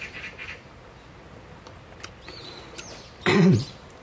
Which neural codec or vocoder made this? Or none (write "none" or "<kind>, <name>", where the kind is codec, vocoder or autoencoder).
none